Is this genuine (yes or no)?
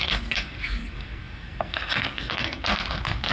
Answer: no